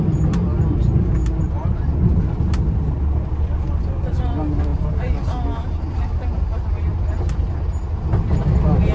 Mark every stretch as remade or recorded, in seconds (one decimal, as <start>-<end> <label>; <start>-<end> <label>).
0.0-8.9 recorded